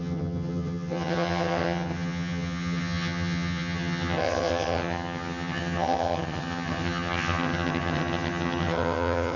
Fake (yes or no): yes